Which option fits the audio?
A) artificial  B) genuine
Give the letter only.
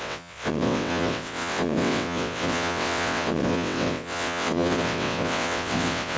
A